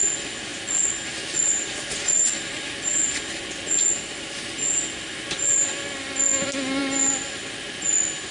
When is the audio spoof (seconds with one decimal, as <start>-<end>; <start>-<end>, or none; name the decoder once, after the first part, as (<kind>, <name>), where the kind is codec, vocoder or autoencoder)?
none

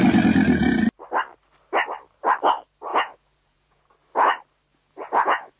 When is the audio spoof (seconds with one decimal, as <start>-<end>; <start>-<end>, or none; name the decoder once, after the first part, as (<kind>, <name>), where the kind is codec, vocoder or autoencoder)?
2.9-3.8 (vocoder, Vocos); 4.7-5.6

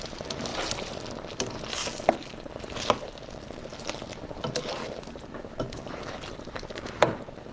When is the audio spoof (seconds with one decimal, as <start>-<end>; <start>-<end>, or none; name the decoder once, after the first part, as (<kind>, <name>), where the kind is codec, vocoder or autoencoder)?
0.0-1.8 (vocoder, BigVGAN v2); 2.5-7.5